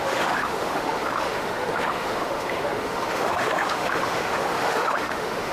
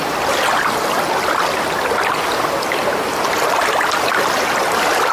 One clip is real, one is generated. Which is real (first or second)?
second